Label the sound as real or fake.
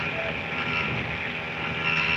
real